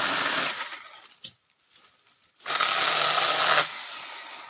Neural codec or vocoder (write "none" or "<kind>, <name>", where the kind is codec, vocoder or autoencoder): none